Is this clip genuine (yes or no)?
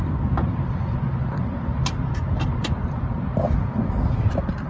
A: no